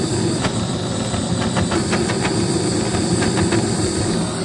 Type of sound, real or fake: real